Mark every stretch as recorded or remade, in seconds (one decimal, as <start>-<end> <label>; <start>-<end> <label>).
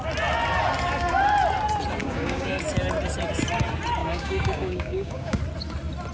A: 0.0-2.0 recorded; 2.0-2.6 remade; 2.6-4.0 recorded; 4.0-5.4 remade; 5.4-6.1 recorded